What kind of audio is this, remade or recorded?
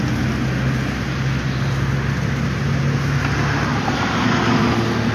recorded